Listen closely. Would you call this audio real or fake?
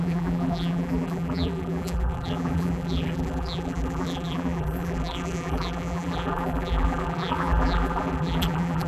fake